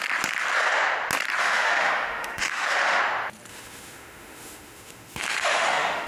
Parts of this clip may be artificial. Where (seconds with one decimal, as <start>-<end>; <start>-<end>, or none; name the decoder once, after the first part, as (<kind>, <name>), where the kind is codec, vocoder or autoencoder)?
1.4-3.0 (autoencoder, DAC-VAE); 3.5-6.1